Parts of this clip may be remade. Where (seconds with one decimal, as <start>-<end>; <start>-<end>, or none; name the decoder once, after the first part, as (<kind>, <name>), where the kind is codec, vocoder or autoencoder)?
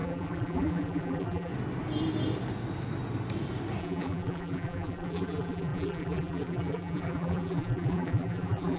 0.0-1.5 (vocoder, BigVGAN v2); 3.8-8.8